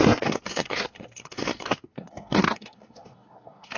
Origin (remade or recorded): remade